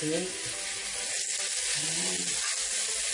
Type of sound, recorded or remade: recorded